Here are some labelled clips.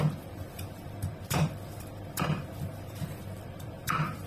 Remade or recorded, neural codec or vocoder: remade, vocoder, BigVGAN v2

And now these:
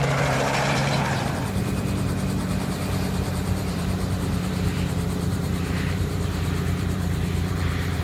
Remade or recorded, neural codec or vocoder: remade, vocoder, BigVGAN v2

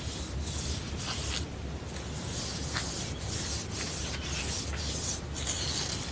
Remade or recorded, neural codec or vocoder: recorded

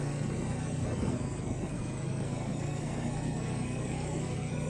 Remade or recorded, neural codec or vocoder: remade, codec, SNAC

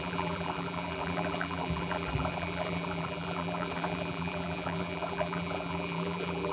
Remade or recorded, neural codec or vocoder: remade, vocoder, BigVGAN v2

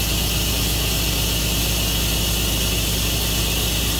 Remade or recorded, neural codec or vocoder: recorded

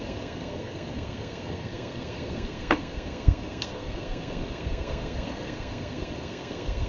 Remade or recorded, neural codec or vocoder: remade, codec, SNAC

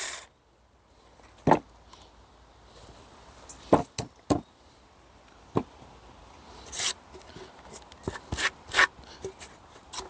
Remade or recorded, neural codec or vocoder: recorded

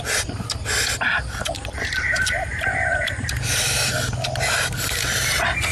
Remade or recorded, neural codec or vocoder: remade, vocoder, BigVGAN v2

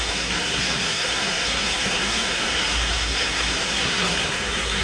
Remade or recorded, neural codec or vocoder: remade, codec, SNAC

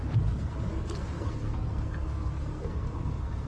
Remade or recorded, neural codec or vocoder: remade, codec, SNAC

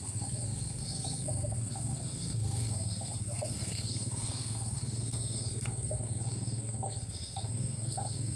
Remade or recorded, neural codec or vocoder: remade, codec, SNAC